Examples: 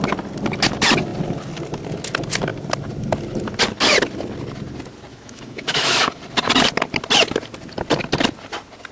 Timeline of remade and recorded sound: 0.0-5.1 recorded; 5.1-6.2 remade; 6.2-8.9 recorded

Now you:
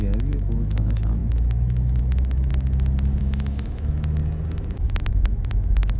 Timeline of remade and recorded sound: 0.0-2.5 remade; 2.5-3.2 recorded; 3.2-4.2 remade; 4.2-5.0 recorded; 5.0-6.0 remade

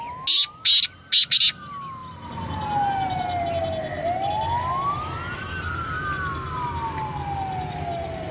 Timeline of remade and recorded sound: 0.0-8.3 recorded